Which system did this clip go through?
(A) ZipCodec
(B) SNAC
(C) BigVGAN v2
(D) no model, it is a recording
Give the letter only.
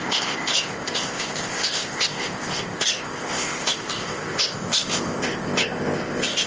A